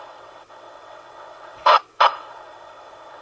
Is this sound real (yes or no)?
no